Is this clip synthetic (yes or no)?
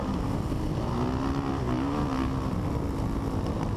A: no